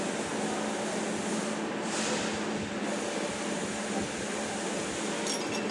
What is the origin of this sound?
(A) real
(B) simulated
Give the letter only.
A